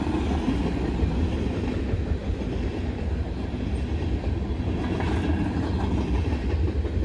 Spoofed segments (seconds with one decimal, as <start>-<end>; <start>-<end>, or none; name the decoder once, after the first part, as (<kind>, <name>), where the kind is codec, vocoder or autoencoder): none